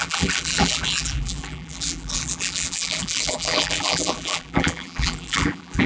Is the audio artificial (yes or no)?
yes